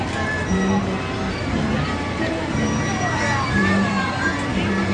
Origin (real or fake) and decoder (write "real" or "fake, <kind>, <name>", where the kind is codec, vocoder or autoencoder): fake, vocoder, BigVGAN v2